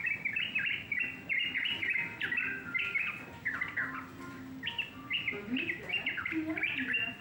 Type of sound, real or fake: real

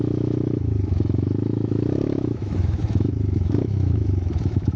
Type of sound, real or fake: fake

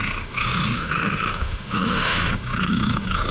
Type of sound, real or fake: fake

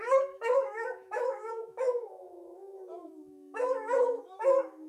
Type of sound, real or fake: fake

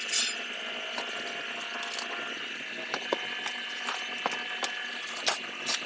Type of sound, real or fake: real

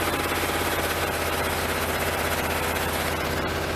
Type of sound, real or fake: real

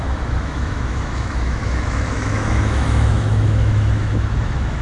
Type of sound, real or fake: fake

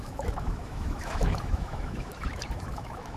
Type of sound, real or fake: fake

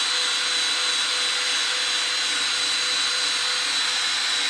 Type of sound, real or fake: real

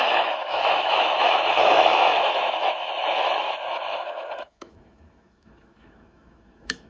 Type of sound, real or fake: fake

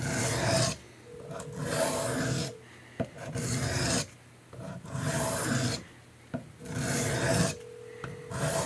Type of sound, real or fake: real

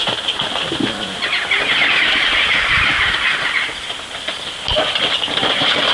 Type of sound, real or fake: real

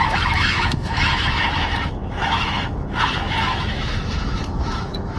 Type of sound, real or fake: fake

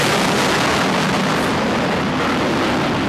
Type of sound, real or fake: real